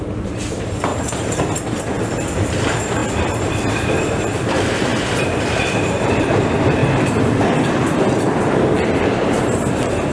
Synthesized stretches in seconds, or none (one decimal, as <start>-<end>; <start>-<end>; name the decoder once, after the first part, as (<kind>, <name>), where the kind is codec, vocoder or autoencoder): 0.0-0.9 (vocoder, BigVGAN v2); 1.8-4.9; 5.6-6.8; 9.7-10.1